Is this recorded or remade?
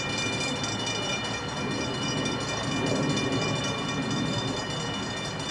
recorded